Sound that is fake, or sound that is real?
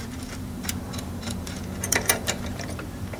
fake